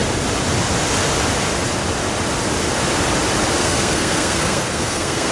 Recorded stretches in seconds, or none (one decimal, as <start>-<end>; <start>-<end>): 0.0-3.6